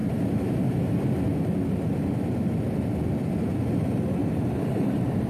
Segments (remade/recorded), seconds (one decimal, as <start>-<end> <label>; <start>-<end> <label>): 0.0-4.2 recorded; 4.2-5.3 remade